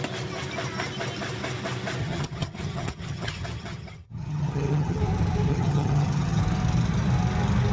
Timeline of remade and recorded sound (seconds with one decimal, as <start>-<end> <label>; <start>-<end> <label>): 0.0-2.0 recorded; 2.0-5.0 remade; 5.0-5.5 recorded; 5.5-6.4 remade; 6.4-7.7 recorded